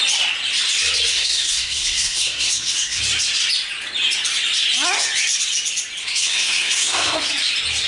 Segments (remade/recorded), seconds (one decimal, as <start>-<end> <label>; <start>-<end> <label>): 0.0-1.1 recorded; 1.1-3.0 remade; 3.0-6.0 recorded; 6.0-7.3 remade; 7.3-7.9 recorded